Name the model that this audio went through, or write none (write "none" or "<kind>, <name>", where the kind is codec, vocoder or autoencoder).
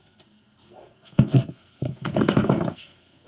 codec, SNAC